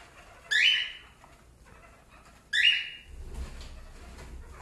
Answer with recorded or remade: recorded